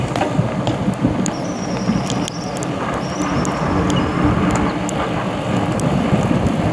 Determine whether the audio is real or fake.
real